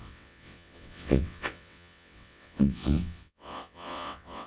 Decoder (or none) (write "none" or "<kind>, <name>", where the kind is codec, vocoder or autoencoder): vocoder, WaveNeXt